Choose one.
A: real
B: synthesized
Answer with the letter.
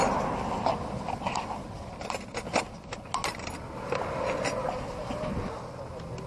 A